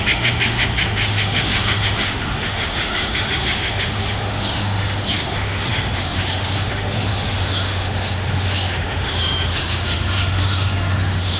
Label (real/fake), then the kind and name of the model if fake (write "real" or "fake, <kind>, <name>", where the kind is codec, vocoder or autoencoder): fake, autoencoder, DAC-VAE